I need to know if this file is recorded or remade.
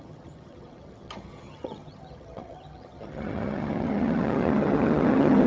remade